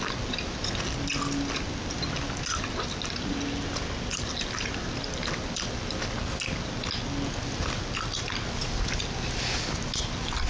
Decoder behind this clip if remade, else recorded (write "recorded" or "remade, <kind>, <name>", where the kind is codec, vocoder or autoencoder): recorded